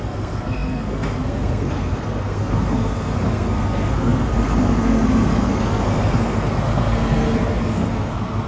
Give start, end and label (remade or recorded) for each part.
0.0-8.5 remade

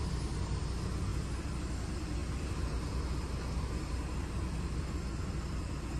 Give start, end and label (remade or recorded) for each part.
0.0-6.0 recorded

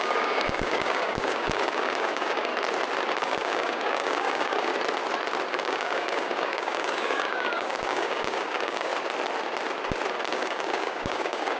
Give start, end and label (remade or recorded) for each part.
0.0-2.5 remade; 2.5-3.2 recorded; 3.2-4.7 remade; 4.7-5.5 recorded; 5.5-8.9 remade; 8.9-10.3 recorded; 10.3-11.6 remade